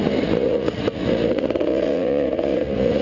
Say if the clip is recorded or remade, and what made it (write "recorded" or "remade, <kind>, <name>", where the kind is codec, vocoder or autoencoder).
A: remade, vocoder, Vocos